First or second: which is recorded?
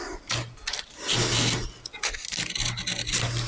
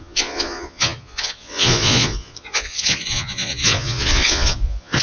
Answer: first